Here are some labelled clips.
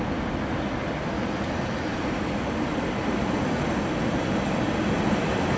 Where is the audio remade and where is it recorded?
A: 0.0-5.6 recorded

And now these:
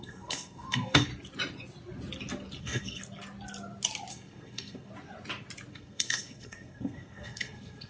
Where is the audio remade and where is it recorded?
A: 0.0-1.1 remade; 1.1-2.6 recorded; 2.6-3.0 remade; 3.0-4.1 recorded; 4.1-4.9 remade; 4.9-5.7 recorded; 5.7-7.9 remade

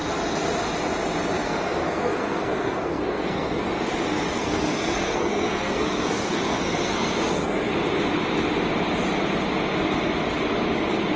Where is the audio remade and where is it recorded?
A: 0.0-1.4 recorded; 1.4-3.6 remade; 3.6-4.3 recorded; 4.3-7.7 remade; 7.7-11.2 recorded

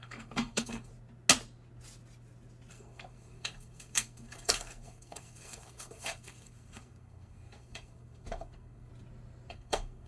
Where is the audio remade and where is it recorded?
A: 0.0-0.9 remade; 0.9-2.7 recorded; 2.7-8.9 remade; 8.9-9.5 recorded; 9.5-10.1 remade

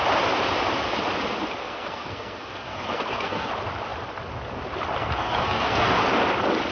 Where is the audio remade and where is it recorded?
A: 0.0-1.6 recorded; 1.6-3.5 remade; 3.5-5.0 recorded; 5.0-6.0 remade; 6.0-6.7 recorded

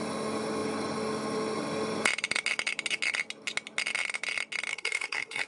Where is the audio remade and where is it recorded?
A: 0.0-4.7 recorded; 4.7-5.5 remade

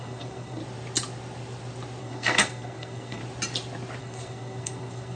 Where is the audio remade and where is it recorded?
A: 0.0-0.6 remade; 0.6-2.0 recorded; 2.0-3.2 remade; 3.2-4.0 recorded; 4.0-5.2 remade